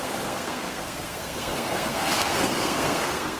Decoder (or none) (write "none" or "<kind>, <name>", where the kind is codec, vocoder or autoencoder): codec, SNAC